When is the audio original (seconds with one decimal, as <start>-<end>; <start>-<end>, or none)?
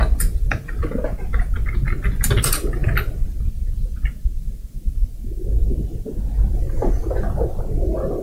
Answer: 0.0-8.2